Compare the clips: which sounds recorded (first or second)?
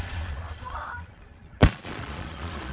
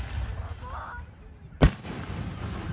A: second